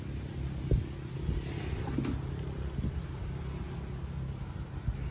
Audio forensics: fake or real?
real